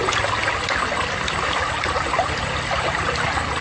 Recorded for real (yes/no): yes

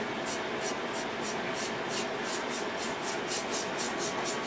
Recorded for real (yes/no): yes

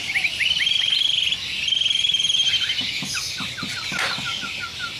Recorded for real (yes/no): yes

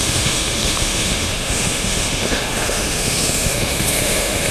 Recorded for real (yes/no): no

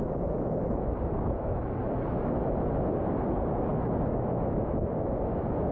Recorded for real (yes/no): no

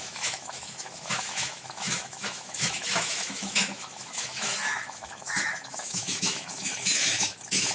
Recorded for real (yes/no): no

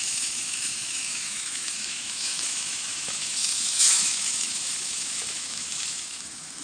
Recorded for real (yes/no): no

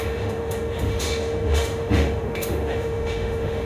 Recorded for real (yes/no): no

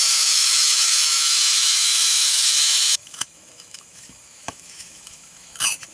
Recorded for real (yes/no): no